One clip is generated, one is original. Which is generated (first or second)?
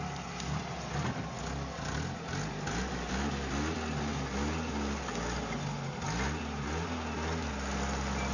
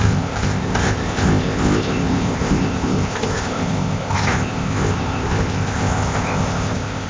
second